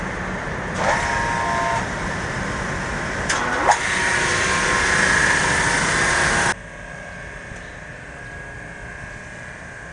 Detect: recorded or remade recorded